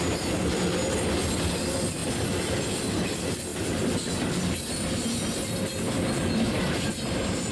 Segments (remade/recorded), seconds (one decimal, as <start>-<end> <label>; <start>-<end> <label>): 0.0-2.0 recorded; 2.0-2.8 remade; 2.8-7.5 recorded